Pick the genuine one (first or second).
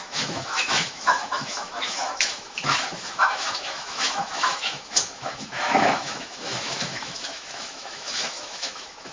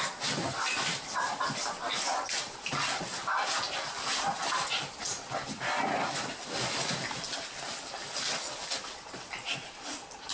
second